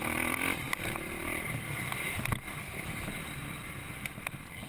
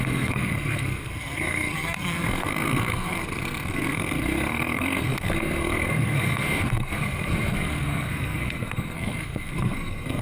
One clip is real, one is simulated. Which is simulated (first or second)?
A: second